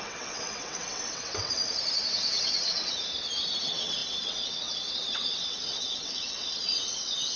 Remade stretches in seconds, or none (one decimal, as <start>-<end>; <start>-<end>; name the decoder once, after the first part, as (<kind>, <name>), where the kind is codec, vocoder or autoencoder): 0.0-1.6 (vocoder, WaveNeXt); 2.1-3.0; 3.6-7.4